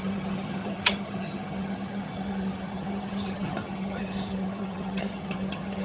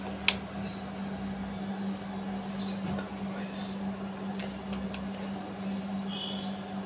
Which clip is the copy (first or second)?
first